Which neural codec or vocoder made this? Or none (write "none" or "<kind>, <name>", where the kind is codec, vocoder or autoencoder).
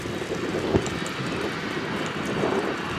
none